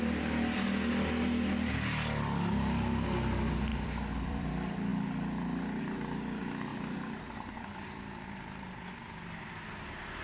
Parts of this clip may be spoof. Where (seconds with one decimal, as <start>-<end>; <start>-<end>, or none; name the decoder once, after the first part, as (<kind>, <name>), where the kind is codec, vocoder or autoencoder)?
3.7-4.5 (vocoder, BigVGAN v2); 6.7-9.5

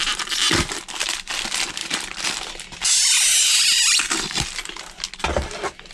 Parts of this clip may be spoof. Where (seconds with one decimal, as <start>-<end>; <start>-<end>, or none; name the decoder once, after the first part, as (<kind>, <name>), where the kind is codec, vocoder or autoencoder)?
1.8-2.3 (vocoder, BigVGAN v2)

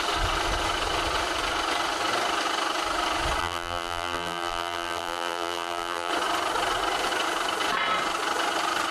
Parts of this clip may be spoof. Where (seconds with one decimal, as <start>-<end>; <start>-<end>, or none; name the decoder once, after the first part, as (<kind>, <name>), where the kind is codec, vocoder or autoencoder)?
3.4-6.1 (vocoder, BigVGAN v2)